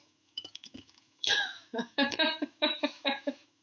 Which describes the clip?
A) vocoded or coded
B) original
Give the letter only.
A